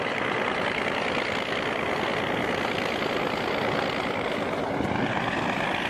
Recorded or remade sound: recorded